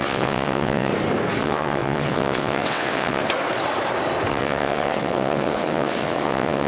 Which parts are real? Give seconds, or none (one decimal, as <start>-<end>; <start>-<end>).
0.9-1.4; 3.2-4.3